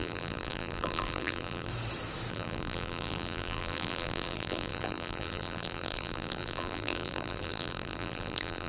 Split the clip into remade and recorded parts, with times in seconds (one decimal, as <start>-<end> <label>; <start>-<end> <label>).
0.0-1.7 remade; 1.7-2.3 recorded; 2.3-8.7 remade